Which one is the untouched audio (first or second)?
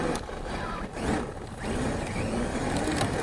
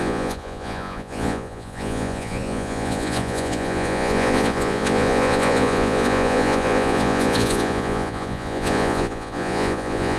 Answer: first